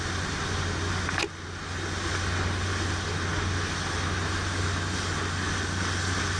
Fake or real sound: real